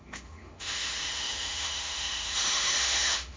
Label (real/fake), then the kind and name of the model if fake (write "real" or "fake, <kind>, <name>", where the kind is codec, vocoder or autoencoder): fake, autoencoder, DAC-VAE